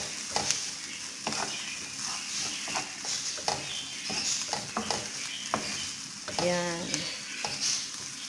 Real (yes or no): yes